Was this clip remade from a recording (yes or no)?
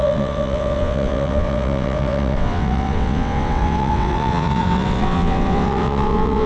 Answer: yes